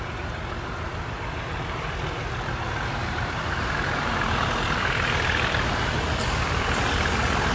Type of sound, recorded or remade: recorded